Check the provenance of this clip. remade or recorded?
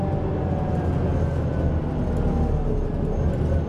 recorded